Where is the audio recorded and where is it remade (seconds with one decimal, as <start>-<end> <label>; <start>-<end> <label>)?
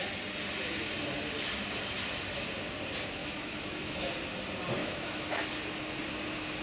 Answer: 0.0-3.2 recorded; 3.2-4.1 remade; 4.1-4.8 recorded; 4.8-5.4 remade; 5.4-6.6 recorded